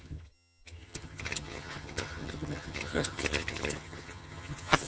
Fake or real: fake